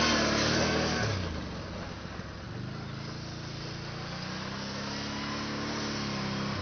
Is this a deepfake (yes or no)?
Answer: no